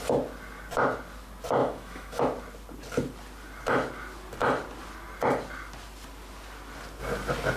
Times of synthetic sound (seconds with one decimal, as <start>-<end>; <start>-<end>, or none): 1.6-2.2